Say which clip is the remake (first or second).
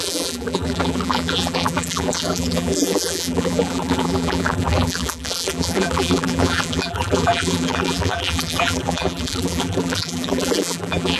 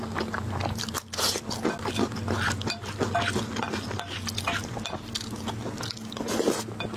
first